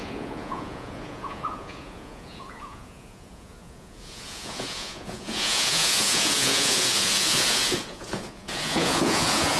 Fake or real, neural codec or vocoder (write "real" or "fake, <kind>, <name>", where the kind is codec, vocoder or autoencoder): fake, vocoder, Vocos